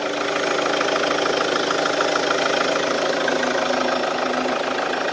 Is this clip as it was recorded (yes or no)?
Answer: yes